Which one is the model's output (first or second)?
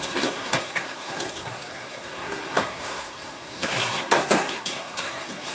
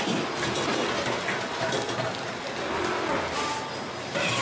first